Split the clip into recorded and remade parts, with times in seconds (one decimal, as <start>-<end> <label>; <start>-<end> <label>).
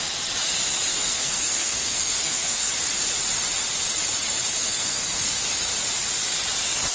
0.0-0.9 recorded; 0.9-2.7 remade; 2.7-4.5 recorded; 4.5-5.4 remade; 5.4-6.9 recorded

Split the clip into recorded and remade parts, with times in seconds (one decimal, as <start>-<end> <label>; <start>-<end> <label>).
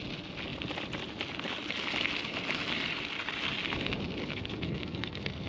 0.0-4.2 recorded; 4.2-5.5 remade